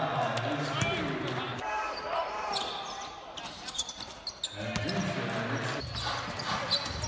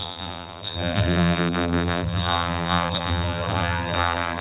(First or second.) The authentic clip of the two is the first